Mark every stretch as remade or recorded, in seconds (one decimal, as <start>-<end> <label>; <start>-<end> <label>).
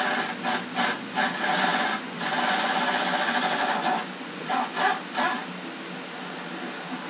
0.0-1.7 recorded; 1.7-4.8 remade; 4.8-7.1 recorded